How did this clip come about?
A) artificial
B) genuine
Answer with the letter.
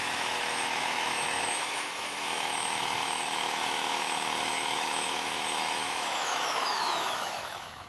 A